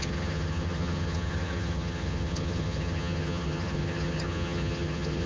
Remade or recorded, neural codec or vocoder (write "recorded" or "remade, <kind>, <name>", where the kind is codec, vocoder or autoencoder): remade, vocoder, HiFi-GAN